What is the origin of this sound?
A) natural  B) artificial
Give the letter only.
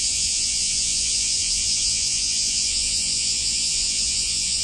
B